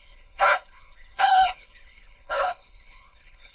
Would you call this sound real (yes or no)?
no